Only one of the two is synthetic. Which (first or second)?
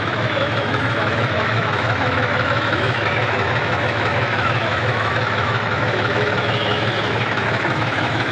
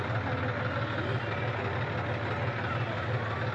first